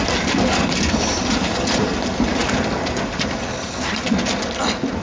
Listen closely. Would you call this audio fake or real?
real